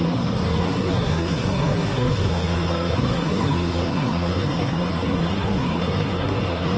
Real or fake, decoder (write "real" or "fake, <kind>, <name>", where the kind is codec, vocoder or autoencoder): fake, codec, SNAC